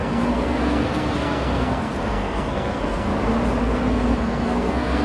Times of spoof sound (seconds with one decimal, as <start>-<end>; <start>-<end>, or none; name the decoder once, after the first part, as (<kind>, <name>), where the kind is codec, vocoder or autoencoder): 0.0-3.1 (codec, SNAC); 3.6-5.0